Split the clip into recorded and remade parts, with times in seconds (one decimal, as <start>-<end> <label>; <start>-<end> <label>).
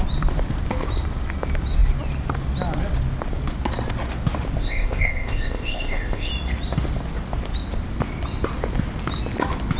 0.0-4.6 recorded; 4.6-6.3 remade; 6.3-9.8 recorded